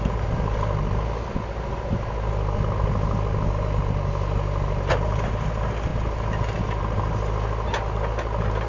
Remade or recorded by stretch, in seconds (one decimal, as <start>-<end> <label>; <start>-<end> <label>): 0.0-8.7 recorded

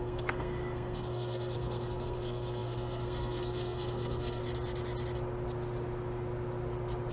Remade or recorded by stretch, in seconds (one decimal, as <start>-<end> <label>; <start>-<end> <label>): 0.0-4.4 remade; 4.4-7.1 recorded

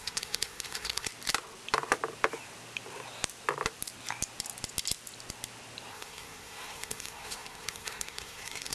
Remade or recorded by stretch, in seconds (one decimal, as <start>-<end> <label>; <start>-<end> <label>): 0.0-1.1 remade; 1.1-5.9 recorded; 5.9-8.7 remade